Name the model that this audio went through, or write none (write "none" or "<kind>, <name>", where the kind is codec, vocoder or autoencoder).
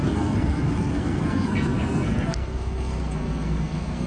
codec, SNAC